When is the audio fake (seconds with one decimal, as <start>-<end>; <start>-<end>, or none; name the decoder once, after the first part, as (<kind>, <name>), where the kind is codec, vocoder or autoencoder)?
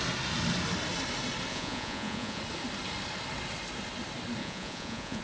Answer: 1.5-2.4 (vocoder, Vocos); 4.4-5.2